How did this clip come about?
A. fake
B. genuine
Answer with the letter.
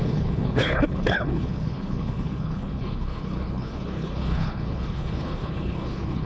A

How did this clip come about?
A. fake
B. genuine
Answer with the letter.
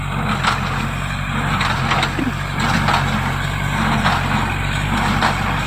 B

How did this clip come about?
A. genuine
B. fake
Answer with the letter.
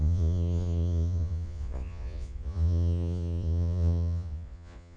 B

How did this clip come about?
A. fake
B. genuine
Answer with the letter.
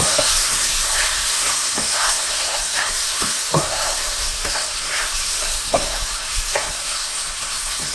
A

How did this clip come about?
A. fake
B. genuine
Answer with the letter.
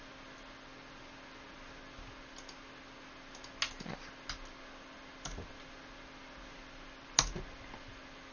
B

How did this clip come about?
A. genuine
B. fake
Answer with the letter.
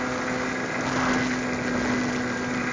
A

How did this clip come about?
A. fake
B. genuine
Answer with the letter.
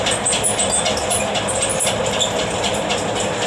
B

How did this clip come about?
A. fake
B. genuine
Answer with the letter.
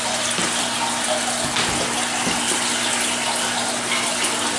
B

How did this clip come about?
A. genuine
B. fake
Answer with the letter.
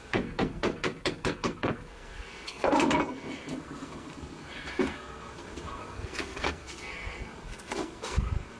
B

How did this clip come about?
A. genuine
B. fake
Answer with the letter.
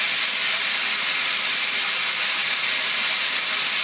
B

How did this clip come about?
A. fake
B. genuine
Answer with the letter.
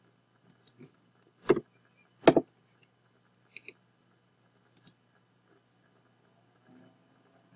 B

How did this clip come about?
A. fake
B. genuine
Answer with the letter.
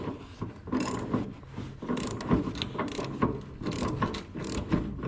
B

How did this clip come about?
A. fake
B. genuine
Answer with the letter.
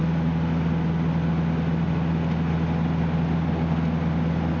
B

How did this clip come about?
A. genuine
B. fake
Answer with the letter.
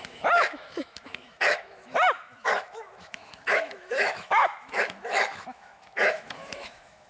B